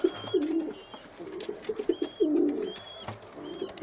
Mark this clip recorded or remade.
recorded